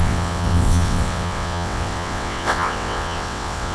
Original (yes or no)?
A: no